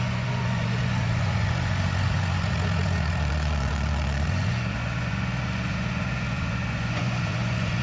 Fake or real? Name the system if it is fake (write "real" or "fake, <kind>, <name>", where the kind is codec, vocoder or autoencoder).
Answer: fake, vocoder, Vocos